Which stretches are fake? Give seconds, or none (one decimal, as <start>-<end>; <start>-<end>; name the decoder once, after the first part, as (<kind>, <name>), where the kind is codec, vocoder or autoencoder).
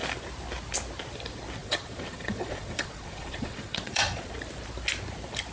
1.6-4.3 (vocoder, Vocos)